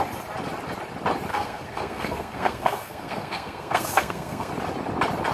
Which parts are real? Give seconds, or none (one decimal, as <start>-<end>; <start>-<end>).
0.0-1.3; 4.5-5.3